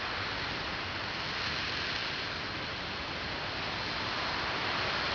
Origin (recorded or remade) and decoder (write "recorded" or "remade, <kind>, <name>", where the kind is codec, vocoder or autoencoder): recorded